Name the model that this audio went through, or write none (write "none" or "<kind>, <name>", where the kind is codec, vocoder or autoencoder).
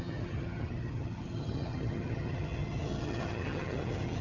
vocoder, HiFi-GAN